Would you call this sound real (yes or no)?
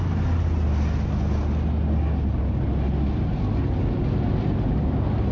yes